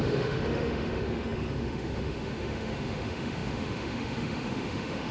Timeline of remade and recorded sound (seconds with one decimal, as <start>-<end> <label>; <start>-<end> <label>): 0.0-5.1 remade